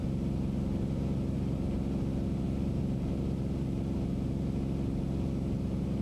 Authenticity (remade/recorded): recorded